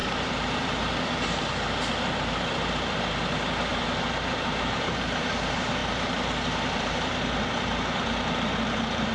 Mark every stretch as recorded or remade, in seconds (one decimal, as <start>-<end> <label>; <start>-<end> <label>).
0.0-1.4 remade; 1.4-3.7 recorded; 3.7-5.3 remade; 5.3-5.8 recorded; 5.8-9.1 remade

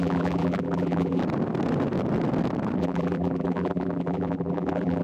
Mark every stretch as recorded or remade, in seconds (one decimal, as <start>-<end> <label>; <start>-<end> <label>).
0.0-1.2 remade; 1.2-2.8 recorded; 2.8-5.0 remade

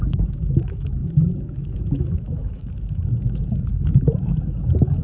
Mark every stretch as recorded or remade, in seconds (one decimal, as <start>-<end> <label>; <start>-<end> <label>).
0.0-5.0 remade

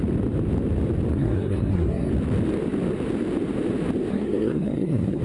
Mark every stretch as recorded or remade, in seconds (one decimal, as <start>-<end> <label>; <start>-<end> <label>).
0.0-1.1 recorded; 1.1-2.1 remade; 2.1-4.1 recorded; 4.1-5.2 remade

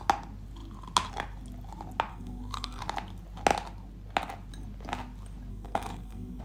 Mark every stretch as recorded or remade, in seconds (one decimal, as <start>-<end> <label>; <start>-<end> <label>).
0.0-2.1 recorded; 2.1-2.8 remade; 2.8-5.5 recorded; 5.5-6.4 remade

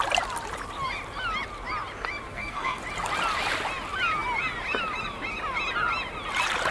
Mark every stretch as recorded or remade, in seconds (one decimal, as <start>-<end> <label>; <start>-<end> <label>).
0.0-2.3 recorded; 2.3-2.8 remade; 2.8-6.7 recorded

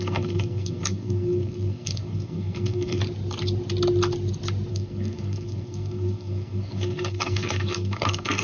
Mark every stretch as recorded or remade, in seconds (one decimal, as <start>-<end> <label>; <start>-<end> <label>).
0.0-3.0 remade; 3.0-4.7 recorded; 4.7-8.4 remade

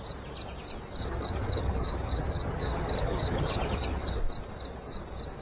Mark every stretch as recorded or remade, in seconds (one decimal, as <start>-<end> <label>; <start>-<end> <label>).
0.0-1.0 recorded; 1.0-4.2 remade; 4.2-5.4 recorded